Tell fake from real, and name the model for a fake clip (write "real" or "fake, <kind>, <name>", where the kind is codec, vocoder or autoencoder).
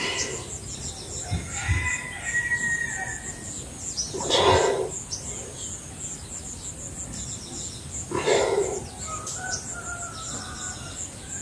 real